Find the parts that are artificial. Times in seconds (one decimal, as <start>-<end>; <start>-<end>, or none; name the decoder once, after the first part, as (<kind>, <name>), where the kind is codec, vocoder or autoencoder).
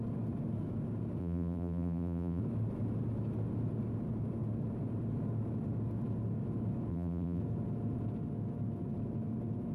1.2-2.4 (vocoder, BigVGAN v2); 6.9-7.4